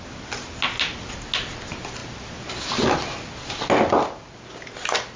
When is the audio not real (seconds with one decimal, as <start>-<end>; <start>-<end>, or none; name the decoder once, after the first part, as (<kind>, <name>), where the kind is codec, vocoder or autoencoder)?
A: none